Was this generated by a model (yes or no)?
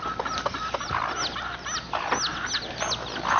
no